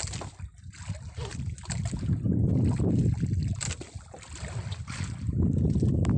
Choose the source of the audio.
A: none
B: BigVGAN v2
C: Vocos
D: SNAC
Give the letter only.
A